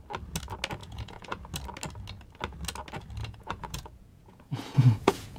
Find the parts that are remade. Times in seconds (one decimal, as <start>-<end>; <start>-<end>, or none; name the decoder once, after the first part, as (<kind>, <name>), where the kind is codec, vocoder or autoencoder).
0.8-1.4 (vocoder, Vocos); 3.2-5.4